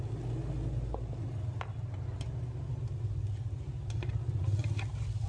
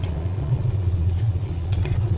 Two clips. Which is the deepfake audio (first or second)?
second